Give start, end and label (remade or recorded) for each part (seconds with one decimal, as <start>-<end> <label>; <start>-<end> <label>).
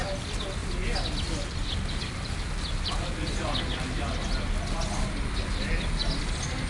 0.0-6.7 recorded